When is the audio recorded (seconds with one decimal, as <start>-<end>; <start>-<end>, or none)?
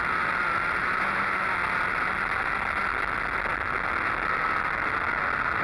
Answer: 0.0-0.8; 1.4-5.6